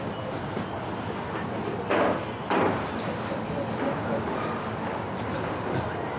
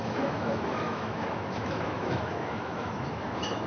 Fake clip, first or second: second